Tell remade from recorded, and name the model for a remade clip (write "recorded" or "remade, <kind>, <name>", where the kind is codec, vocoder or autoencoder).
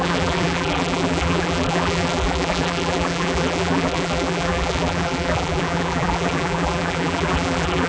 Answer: remade, vocoder, BigVGAN v2